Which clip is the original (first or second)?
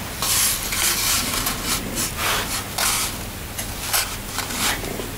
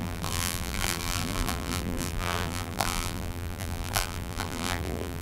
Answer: first